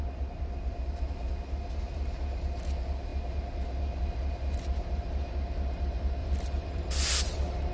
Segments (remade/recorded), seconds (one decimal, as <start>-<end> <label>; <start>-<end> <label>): 0.0-6.2 recorded; 6.2-7.7 remade